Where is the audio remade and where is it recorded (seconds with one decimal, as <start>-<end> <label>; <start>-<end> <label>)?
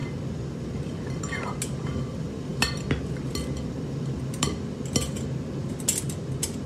0.0-6.7 recorded